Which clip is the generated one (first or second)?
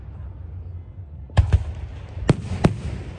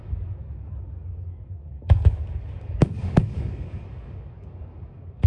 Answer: second